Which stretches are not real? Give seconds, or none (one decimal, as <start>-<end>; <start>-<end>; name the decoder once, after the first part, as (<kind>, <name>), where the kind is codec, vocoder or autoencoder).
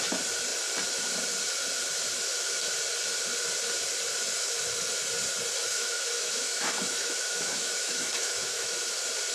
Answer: 5.6-8.9 (autoencoder, DAC-VAE)